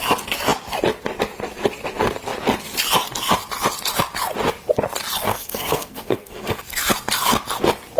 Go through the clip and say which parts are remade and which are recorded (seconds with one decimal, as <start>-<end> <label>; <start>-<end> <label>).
0.0-5.3 recorded; 5.3-6.9 remade; 6.9-8.0 recorded